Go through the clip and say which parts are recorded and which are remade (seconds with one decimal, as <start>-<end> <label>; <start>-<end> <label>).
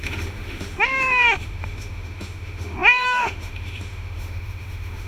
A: 0.0-5.1 remade